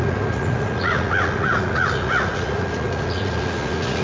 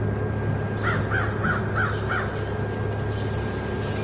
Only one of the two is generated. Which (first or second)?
first